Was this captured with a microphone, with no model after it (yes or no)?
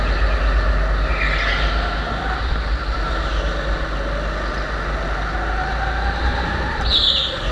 yes